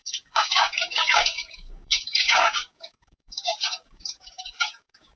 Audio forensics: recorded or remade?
remade